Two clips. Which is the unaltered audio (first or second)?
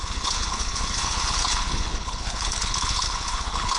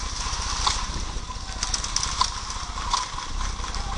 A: second